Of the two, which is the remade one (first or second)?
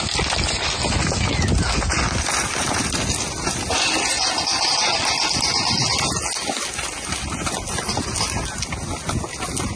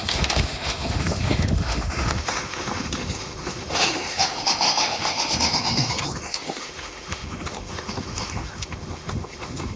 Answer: second